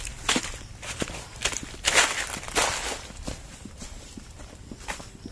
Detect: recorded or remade recorded